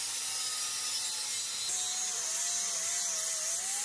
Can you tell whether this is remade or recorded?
recorded